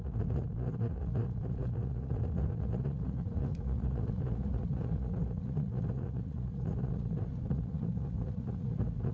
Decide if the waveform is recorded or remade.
remade